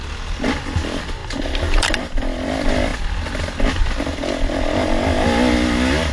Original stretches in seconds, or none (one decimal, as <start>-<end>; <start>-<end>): 0.0-6.1